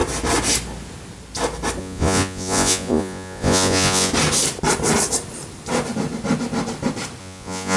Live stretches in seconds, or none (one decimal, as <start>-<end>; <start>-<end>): 0.0-1.8; 4.1-7.2